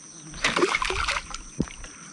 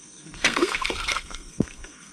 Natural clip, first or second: first